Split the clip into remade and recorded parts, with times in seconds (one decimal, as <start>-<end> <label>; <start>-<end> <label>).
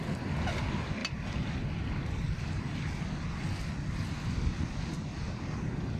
0.0-6.0 recorded